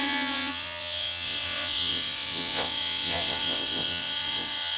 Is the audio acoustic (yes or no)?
no